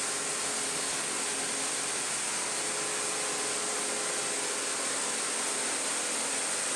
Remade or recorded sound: recorded